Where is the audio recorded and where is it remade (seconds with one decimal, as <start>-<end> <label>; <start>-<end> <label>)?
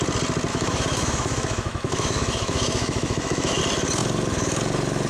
0.0-0.5 recorded; 0.5-3.6 remade; 3.6-5.1 recorded